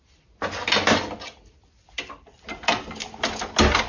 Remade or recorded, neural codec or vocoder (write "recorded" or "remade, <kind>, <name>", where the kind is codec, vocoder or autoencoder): recorded